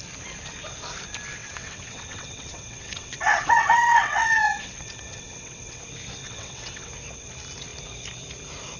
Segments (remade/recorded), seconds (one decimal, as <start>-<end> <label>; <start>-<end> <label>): 0.0-1.4 recorded; 1.4-5.8 remade; 5.8-6.2 recorded; 6.2-6.9 remade; 6.9-8.8 recorded